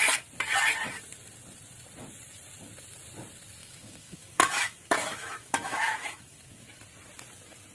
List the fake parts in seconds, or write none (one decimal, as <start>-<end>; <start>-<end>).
3.6-6.8